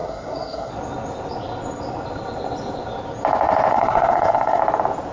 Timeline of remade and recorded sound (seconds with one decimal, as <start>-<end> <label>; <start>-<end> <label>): 0.0-0.7 remade; 0.7-3.7 recorded; 3.7-4.6 remade; 4.6-5.1 recorded